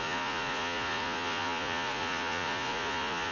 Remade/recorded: remade